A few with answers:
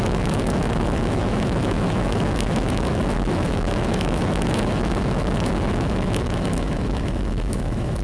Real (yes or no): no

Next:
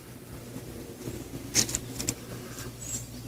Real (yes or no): yes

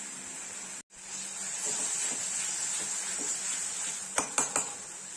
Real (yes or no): yes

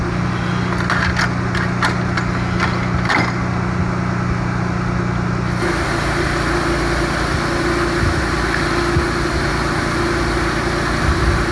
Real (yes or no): yes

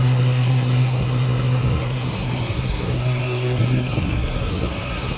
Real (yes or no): no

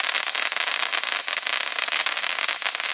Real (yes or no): yes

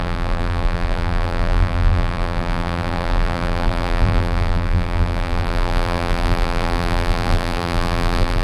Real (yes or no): no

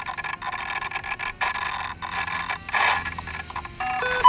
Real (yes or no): yes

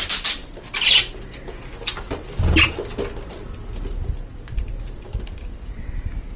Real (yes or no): yes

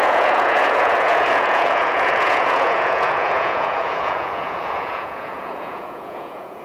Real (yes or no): no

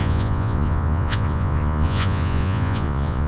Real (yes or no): no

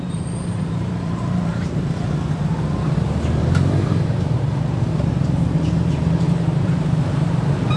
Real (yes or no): no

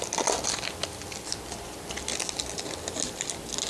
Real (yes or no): yes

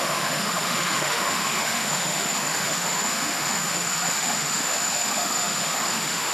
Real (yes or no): no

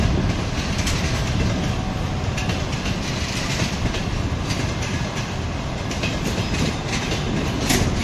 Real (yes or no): yes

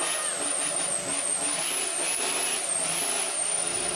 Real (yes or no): yes